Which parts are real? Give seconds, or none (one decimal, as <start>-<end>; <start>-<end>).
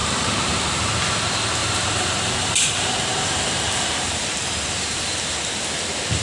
0.9-1.6; 5.3-6.2